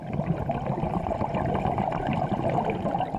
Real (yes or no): yes